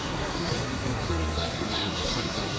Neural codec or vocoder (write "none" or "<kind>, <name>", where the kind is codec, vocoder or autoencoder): codec, SNAC